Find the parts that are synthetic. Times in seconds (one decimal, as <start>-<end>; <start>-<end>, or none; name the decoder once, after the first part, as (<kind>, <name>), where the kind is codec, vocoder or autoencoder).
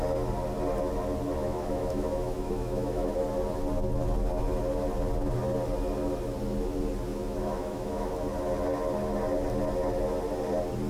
1.4-3.1 (autoencoder, DAC-VAE); 7.1-8.1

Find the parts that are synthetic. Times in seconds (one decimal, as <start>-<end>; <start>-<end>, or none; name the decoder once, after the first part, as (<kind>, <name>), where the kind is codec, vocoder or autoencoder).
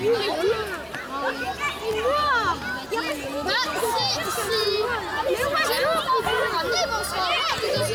none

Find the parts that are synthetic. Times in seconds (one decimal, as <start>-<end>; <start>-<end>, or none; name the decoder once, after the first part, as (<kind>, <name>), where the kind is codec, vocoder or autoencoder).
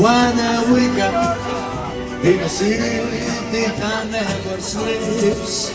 0.8-4.2 (autoencoder, DAC-VAE)